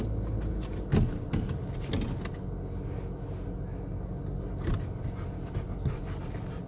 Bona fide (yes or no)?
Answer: yes